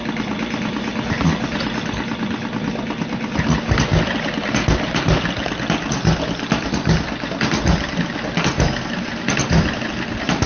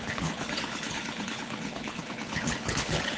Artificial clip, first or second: second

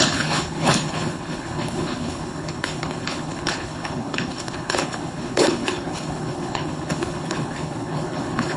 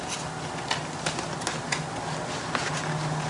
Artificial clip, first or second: first